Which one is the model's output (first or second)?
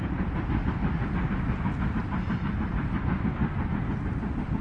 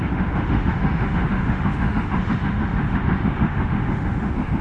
second